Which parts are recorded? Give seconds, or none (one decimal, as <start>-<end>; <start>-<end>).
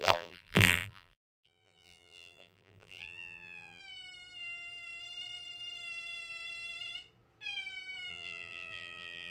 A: 3.8-8.1